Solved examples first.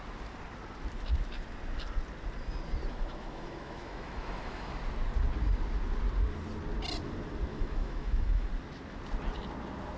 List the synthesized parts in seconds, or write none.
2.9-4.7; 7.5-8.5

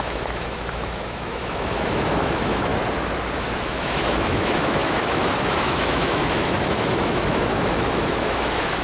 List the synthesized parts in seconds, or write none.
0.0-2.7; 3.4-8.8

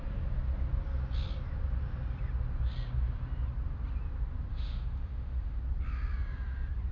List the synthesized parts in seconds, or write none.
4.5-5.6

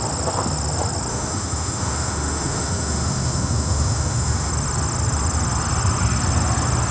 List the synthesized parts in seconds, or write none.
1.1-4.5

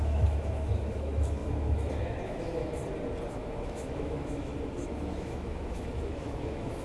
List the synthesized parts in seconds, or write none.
0.0-2.8; 3.3-4.5; 5.0-6.8

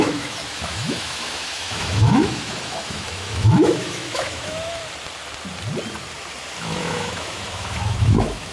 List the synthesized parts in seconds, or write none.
0.0-4.8; 6.6-8.5

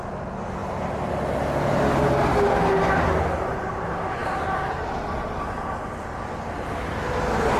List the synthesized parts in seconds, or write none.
none

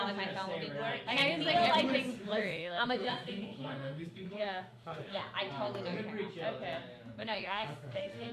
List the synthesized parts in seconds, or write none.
2.1-5.2; 7.2-8.3